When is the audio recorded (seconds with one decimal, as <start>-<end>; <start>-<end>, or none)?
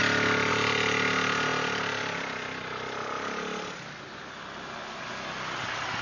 0.0-6.0